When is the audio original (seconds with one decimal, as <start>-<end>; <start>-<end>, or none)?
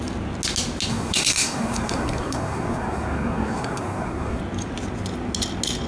0.0-0.9; 4.4-5.9